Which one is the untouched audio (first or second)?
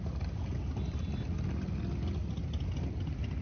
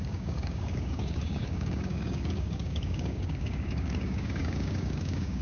first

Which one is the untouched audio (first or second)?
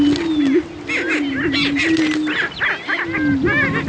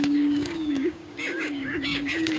first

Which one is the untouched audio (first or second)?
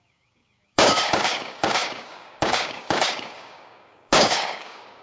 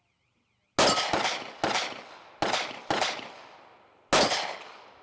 second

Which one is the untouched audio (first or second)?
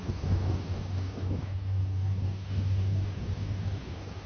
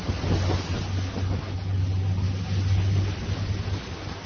second